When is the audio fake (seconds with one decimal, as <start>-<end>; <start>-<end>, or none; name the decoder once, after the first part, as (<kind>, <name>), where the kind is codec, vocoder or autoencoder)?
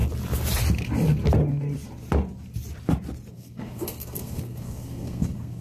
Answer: 3.3-5.6 (codec, SNAC)